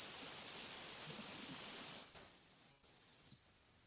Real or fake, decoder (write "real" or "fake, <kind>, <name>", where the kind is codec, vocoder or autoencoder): real